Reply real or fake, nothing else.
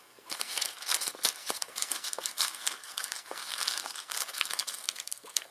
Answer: fake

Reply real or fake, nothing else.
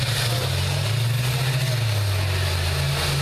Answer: real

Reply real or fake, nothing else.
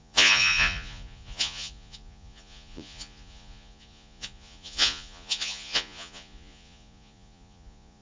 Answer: fake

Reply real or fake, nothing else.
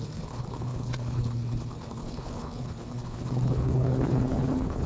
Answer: fake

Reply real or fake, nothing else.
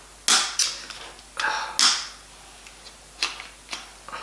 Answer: real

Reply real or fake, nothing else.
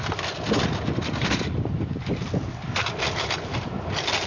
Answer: real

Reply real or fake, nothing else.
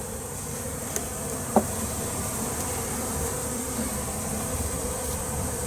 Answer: real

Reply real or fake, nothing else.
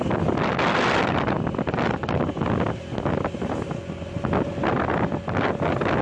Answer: real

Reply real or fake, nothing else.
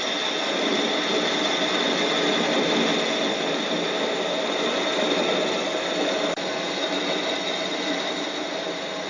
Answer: real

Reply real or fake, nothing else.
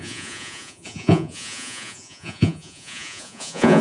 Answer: fake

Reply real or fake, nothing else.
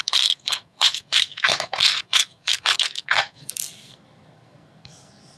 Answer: fake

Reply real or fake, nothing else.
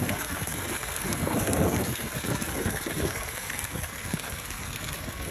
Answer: fake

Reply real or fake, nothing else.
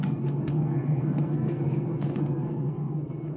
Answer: fake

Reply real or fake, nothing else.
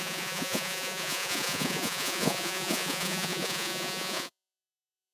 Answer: fake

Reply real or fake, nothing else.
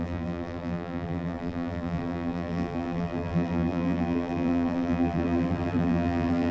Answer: fake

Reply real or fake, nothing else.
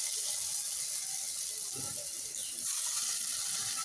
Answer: real